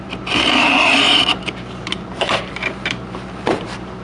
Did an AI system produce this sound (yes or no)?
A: yes